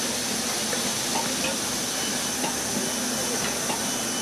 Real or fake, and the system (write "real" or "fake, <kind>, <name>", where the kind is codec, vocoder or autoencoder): real